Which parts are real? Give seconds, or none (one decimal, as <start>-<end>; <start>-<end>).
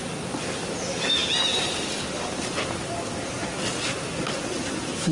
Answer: 0.0-5.1